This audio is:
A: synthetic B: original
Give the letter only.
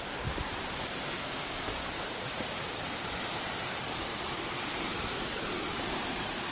A